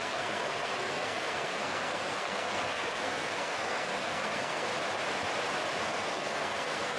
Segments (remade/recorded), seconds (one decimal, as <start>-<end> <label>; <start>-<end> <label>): 0.0-4.7 remade; 4.7-5.8 recorded; 5.8-7.0 remade